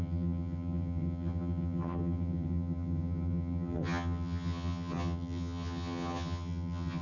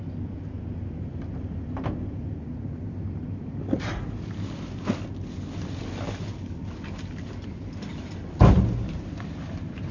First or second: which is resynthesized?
first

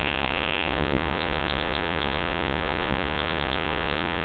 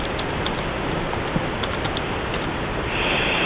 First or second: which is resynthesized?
first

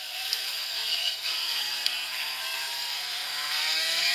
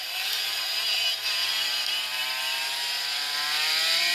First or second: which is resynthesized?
first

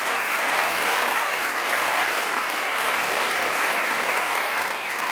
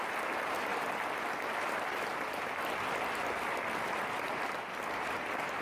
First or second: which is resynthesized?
first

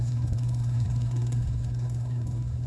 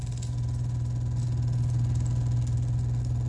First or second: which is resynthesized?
first